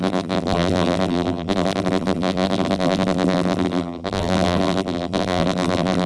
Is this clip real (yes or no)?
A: no